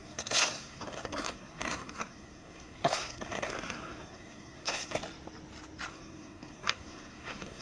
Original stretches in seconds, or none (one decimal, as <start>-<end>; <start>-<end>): 5.0-5.9